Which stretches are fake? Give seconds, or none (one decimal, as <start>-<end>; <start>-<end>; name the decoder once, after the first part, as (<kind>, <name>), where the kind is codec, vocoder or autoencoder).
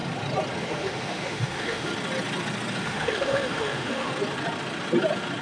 0.6-1.9 (autoencoder, DAC-VAE); 2.8-4.1